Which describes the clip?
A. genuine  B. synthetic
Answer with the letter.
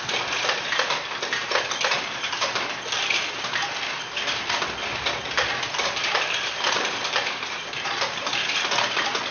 B